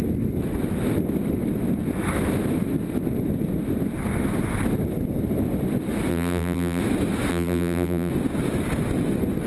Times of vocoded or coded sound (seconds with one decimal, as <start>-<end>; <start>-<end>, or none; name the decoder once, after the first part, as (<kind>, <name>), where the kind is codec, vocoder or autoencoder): 6.1-6.8 (vocoder, BigVGAN v2); 7.3-8.1